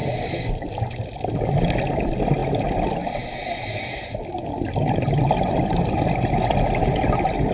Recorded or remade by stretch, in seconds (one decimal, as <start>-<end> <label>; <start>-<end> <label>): 0.0-7.5 recorded